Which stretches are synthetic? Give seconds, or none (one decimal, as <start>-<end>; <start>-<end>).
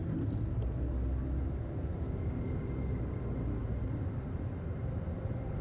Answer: 1.9-3.2